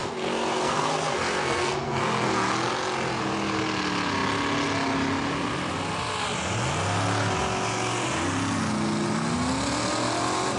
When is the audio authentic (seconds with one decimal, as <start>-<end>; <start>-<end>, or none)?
2.5-10.6